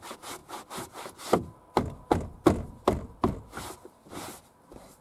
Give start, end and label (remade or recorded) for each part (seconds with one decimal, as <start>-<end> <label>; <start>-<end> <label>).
0.0-5.0 recorded